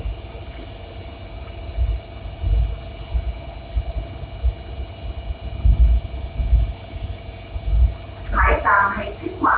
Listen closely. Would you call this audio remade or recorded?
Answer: recorded